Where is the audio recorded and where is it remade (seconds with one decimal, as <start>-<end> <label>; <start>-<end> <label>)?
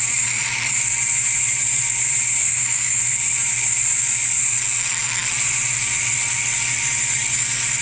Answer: 0.0-2.4 recorded; 2.4-3.0 remade; 3.0-7.8 recorded